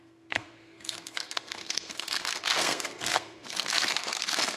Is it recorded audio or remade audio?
remade